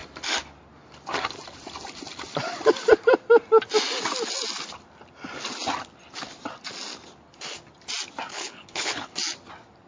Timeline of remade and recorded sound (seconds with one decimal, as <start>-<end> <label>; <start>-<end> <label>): 0.0-8.3 recorded; 8.3-9.1 remade; 9.1-9.9 recorded